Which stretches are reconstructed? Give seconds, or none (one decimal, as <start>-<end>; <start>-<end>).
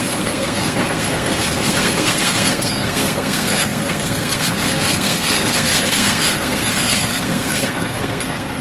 0.0-8.6